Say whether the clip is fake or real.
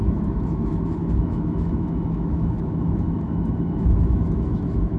fake